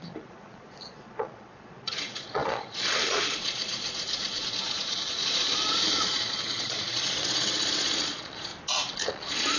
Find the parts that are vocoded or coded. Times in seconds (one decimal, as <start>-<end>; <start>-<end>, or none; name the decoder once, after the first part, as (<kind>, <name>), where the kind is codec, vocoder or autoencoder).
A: 0.0-8.5 (vocoder, Vocos); 9.1-9.6